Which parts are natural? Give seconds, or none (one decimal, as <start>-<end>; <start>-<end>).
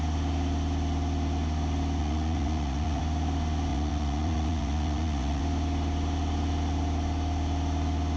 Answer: 0.0-2.0; 3.0-3.7; 5.4-8.2